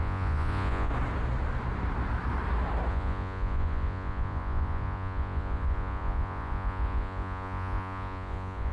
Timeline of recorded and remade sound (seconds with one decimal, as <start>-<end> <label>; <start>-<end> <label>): 0.0-0.9 remade; 0.9-2.9 recorded; 2.9-8.7 remade